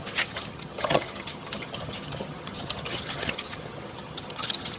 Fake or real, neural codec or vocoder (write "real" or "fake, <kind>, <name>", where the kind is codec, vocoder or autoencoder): fake, vocoder, HiFi-GAN